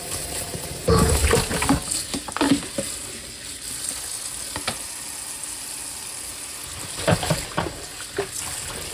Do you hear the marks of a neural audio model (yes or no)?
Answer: no